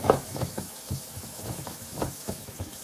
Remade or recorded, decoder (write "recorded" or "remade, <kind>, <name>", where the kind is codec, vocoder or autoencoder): remade, autoencoder, DAC-VAE